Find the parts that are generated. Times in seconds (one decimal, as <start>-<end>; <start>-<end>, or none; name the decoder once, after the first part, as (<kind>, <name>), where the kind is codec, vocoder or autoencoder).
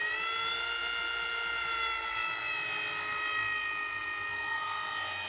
none